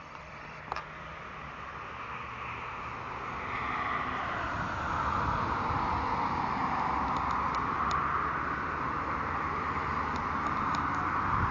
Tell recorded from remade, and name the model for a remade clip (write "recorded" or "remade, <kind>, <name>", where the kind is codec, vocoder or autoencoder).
recorded